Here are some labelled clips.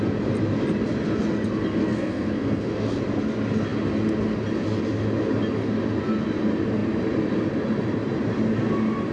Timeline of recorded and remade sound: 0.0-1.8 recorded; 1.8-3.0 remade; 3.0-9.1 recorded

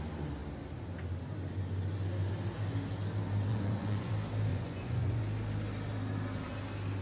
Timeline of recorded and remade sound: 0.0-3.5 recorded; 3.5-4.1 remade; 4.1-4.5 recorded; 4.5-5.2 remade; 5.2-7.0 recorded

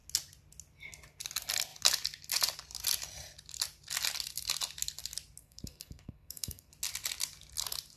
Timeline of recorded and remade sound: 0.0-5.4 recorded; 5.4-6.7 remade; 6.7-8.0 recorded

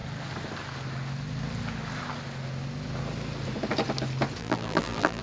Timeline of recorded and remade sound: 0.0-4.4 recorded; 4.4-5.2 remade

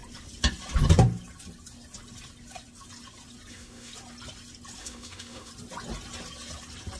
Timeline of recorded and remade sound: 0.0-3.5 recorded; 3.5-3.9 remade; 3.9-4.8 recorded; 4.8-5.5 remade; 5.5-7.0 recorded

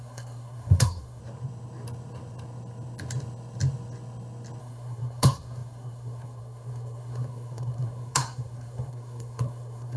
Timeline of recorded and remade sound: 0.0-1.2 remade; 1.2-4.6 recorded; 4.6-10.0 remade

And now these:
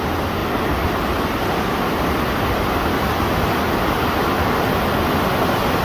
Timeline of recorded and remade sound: 0.0-5.8 recorded

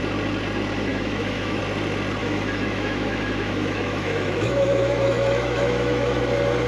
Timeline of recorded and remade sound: 0.0-0.9 recorded; 0.9-1.6 remade; 1.6-2.2 recorded; 2.2-6.2 remade; 6.2-6.7 recorded